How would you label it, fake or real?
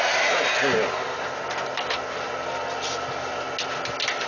real